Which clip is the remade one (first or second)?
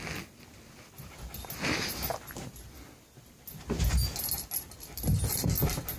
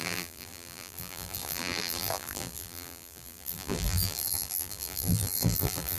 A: second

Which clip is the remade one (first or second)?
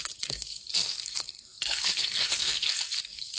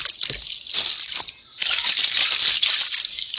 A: first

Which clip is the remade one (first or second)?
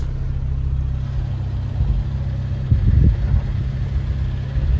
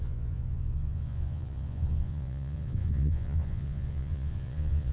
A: second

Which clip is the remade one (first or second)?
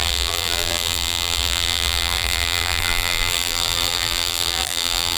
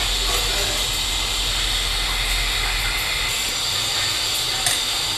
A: first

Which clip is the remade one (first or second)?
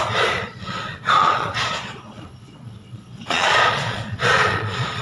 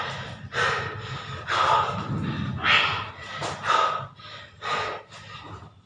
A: first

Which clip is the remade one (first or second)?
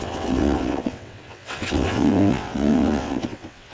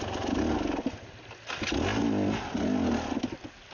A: first